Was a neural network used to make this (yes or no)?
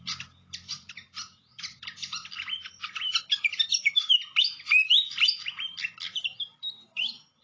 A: yes